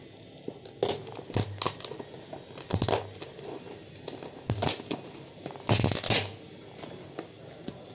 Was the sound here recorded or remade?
recorded